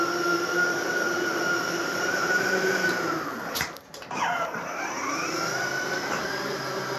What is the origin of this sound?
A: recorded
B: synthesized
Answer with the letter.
B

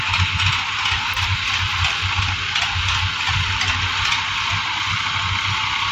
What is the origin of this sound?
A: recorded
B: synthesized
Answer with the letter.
A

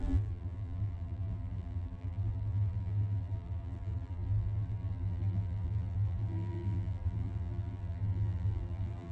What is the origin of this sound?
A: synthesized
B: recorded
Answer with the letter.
A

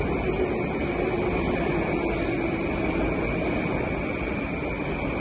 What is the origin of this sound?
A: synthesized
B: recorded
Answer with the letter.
B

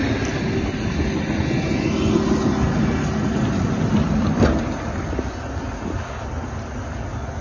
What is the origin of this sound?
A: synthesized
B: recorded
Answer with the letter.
B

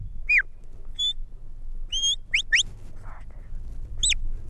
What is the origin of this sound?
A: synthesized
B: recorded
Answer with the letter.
B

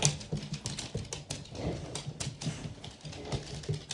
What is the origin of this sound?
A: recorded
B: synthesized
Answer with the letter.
A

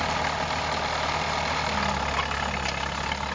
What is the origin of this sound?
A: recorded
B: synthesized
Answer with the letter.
A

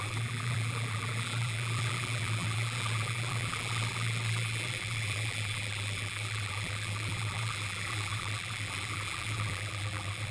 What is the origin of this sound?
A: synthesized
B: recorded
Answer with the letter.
A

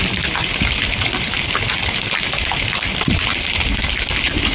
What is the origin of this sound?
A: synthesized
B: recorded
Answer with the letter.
B